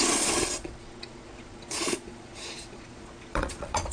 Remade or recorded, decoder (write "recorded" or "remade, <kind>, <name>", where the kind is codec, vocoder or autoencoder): remade, vocoder, Vocos